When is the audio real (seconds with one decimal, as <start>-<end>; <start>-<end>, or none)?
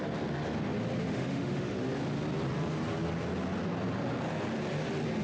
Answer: 0.0-1.0; 1.8-5.2